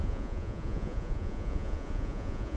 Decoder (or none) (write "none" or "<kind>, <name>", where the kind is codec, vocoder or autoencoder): vocoder, Vocos